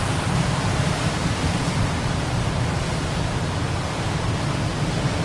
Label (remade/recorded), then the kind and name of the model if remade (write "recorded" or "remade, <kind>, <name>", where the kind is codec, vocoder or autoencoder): recorded